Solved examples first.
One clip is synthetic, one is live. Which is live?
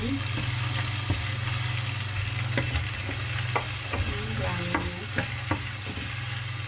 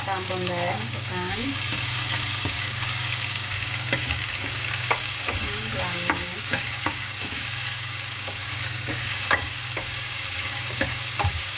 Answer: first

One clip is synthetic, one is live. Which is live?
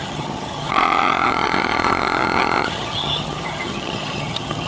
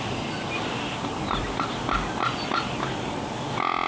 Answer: second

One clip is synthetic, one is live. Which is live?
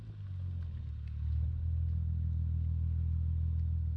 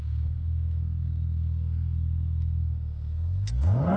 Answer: first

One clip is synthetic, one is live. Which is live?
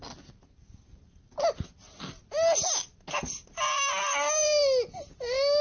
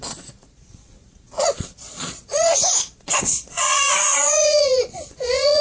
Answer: first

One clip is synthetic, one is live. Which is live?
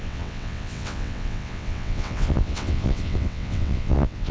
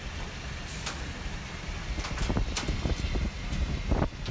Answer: second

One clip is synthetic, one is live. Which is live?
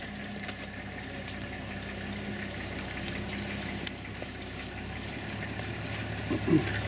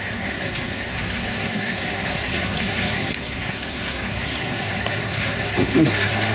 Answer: first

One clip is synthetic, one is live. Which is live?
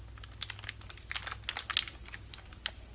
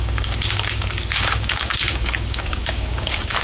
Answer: first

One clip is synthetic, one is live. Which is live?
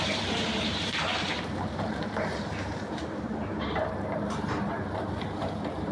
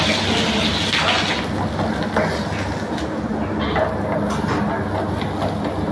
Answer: second